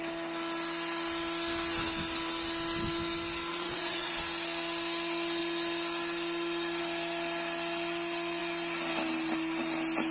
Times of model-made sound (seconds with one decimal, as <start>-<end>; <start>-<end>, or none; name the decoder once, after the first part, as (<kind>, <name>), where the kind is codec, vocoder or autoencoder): 3.5-4.1 (vocoder, WaveNeXt)

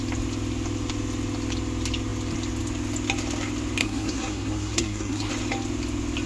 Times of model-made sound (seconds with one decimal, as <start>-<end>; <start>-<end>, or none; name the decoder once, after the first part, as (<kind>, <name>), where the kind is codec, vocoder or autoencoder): 3.8-5.3 (codec, SNAC)

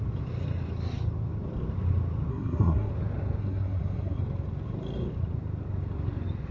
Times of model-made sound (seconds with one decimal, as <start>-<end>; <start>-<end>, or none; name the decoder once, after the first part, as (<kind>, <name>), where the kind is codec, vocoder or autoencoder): 2.3-2.9 (codec, SNAC); 3.4-4.2

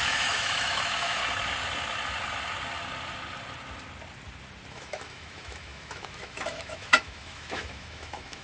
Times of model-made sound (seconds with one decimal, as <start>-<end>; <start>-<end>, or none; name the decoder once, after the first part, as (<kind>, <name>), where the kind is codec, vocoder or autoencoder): 0.0-1.2 (autoencoder, DAC-VAE); 4.7-8.4

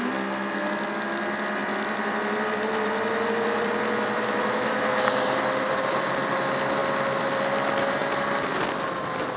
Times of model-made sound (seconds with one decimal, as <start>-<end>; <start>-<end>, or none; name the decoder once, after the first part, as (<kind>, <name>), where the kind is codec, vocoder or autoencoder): 1.6-6.3 (vocoder, BigVGAN v2); 6.8-7.4

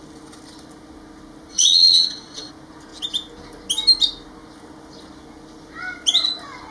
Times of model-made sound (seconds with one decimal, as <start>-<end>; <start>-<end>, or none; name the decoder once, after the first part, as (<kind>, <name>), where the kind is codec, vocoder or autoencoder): 1.5-2.5 (vocoder, WaveNeXt)

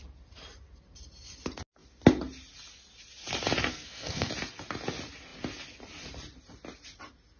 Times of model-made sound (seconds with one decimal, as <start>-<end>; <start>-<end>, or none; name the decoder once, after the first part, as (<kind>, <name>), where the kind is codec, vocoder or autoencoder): 3.7-4.3 (codec, SNAC)

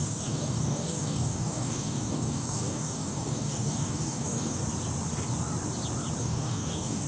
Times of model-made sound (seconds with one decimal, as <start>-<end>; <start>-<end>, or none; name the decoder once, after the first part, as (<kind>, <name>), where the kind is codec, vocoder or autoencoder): 0.0-4.6 (codec, DAC); 6.2-7.1